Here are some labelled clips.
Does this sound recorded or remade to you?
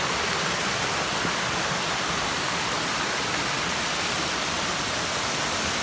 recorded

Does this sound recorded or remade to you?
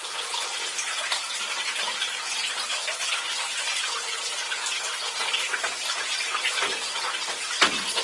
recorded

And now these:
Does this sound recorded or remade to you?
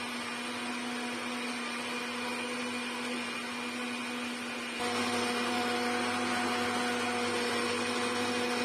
recorded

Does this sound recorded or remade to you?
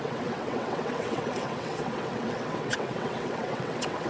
remade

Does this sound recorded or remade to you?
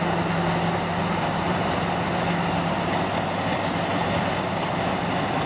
recorded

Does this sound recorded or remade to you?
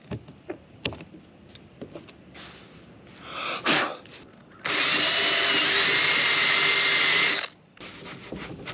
recorded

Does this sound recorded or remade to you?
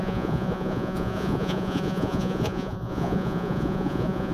remade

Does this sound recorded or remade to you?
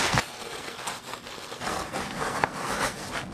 remade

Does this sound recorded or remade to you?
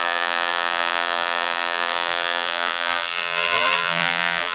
remade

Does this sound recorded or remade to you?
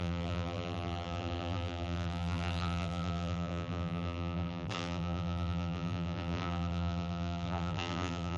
remade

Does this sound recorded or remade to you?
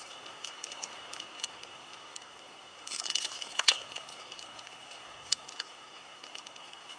remade